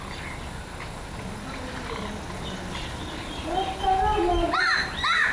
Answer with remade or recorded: recorded